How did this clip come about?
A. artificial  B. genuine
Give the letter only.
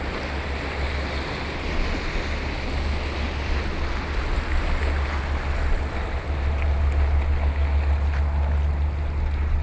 B